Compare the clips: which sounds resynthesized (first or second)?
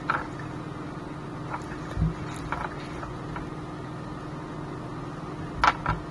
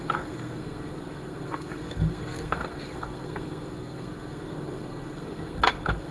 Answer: second